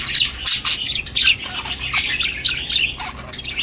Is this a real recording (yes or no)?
yes